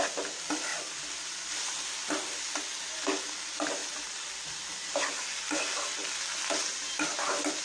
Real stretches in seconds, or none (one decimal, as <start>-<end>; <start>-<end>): 0.0-0.7; 1.6-3.8; 4.4-7.6